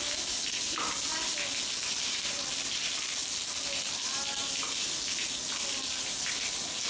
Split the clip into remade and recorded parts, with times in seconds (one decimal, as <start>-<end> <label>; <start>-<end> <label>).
0.0-6.9 recorded